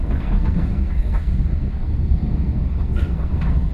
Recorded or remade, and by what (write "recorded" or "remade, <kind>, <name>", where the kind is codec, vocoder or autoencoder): remade, codec, SNAC